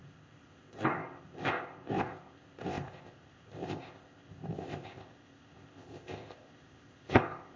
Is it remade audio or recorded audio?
remade